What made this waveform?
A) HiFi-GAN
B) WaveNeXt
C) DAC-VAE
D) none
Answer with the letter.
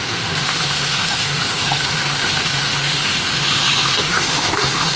C